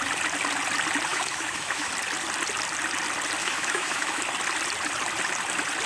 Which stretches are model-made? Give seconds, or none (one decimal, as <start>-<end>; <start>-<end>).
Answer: 1.1-1.9; 3.4-4.2